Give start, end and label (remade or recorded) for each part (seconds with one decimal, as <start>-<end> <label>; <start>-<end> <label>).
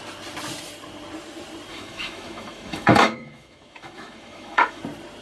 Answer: 0.0-1.7 recorded; 1.7-4.8 remade; 4.8-5.2 recorded